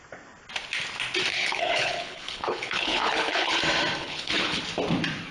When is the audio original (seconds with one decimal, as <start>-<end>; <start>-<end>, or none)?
0.0-1.3; 3.6-4.0; 4.6-5.3